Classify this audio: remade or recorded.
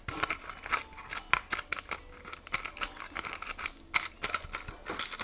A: recorded